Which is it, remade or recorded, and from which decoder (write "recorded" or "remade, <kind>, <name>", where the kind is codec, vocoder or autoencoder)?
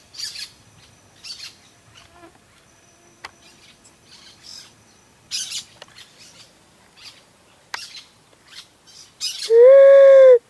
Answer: recorded